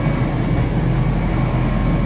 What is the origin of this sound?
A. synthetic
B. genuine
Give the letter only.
B